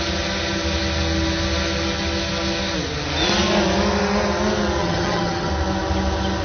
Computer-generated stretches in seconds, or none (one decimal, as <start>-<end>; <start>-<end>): 4.8-5.5

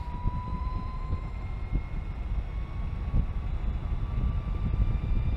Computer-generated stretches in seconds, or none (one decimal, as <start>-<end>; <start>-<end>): 0.5-1.0

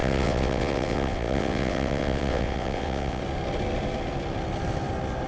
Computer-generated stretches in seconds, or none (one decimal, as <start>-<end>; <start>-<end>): 0.0-3.2

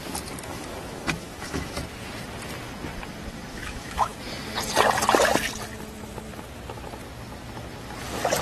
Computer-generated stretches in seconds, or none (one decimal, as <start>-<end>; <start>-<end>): 0.5-1.8; 3.5-4.2

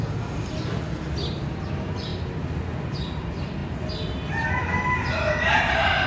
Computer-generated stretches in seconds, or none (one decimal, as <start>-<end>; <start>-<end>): none

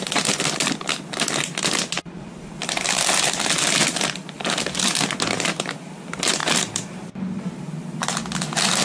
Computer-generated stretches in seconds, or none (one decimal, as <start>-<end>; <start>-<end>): none

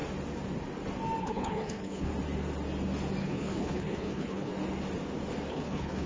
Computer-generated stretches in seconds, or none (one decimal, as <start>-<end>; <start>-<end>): 1.2-2.1; 3.2-4.5; 5.5-6.1

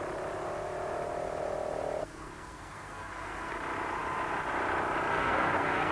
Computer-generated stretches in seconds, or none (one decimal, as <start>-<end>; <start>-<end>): 2.0-3.5; 5.1-5.9